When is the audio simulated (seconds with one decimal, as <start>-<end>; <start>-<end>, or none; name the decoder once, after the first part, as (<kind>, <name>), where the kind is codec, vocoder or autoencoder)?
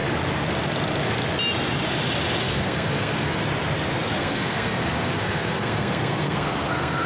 2.4-3.4 (codec, SNAC); 4.2-7.1